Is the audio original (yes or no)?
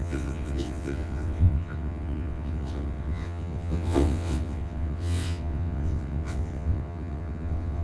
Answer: no